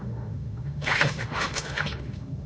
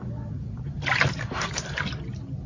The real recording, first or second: second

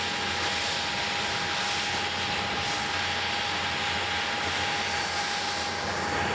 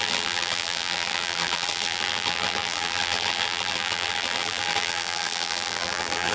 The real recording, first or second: first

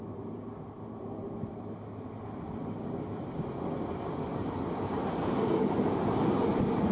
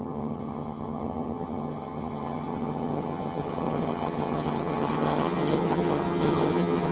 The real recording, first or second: first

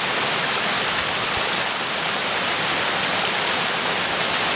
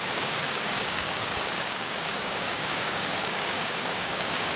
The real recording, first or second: first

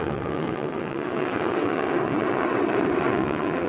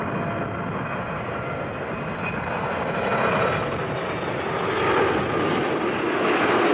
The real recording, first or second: second